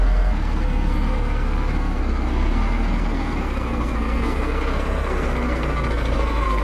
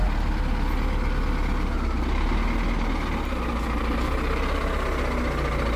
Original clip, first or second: second